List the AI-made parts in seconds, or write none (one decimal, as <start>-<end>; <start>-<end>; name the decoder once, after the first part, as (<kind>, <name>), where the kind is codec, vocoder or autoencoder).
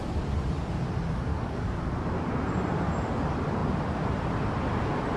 1.3-1.8 (codec, DAC)